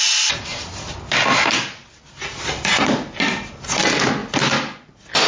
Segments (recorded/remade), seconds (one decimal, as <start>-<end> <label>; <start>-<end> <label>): 0.0-5.3 recorded